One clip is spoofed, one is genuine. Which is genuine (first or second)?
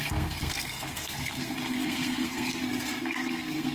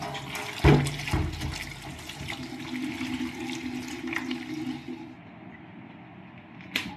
second